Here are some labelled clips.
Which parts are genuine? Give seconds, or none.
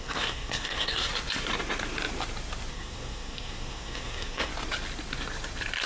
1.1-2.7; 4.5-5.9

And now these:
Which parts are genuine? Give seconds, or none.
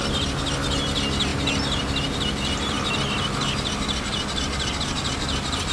0.0-5.7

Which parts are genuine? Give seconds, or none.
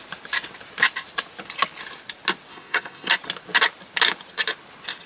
0.0-2.5; 3.1-5.1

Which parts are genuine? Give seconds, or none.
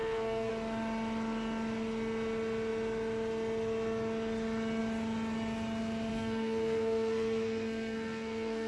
0.5-6.1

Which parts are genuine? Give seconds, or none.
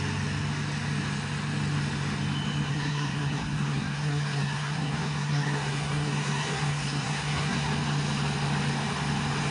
0.0-2.7; 7.7-9.5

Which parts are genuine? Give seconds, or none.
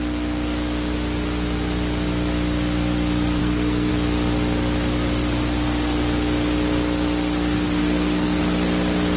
0.0-3.4; 3.9-7.8; 8.4-9.2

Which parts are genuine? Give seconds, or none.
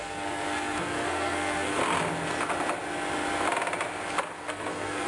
1.8-4.5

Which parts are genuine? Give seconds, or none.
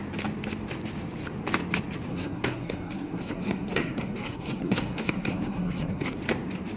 0.0-2.1; 6.2-6.8